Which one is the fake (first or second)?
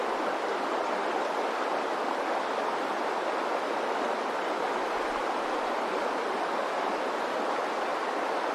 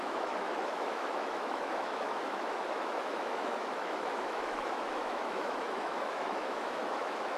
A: second